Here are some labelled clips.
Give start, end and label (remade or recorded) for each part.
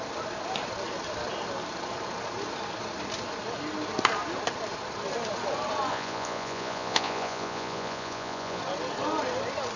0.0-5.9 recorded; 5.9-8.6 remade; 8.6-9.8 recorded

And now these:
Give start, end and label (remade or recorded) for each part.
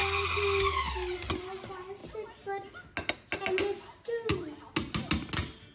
0.0-5.7 recorded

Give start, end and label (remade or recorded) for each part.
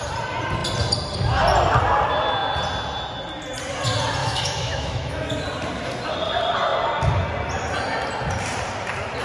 0.0-4.2 recorded; 4.2-5.3 remade; 5.3-9.2 recorded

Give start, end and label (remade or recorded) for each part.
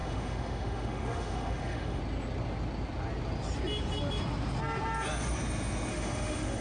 0.0-2.0 remade; 2.0-5.9 recorded; 5.9-6.6 remade